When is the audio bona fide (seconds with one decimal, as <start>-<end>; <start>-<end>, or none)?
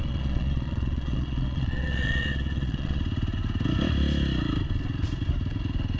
3.0-6.0